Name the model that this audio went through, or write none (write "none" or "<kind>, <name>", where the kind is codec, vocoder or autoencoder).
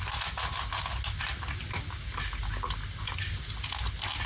none